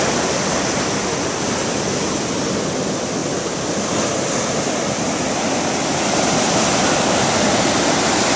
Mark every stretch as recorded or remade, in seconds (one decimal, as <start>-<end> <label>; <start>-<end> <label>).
0.0-8.4 recorded